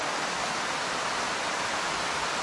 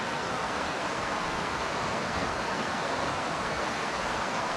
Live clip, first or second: first